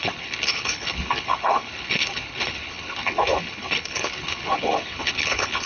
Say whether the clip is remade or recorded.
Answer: remade